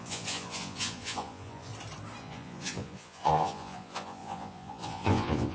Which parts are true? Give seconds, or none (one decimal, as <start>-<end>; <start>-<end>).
1.7-2.2